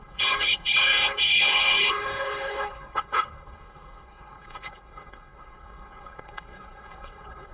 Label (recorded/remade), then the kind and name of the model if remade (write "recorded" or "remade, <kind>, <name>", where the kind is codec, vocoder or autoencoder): remade, codec, HILCodec